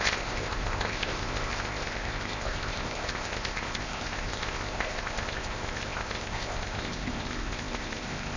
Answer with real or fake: fake